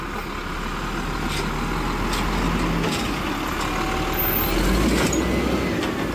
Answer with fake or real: real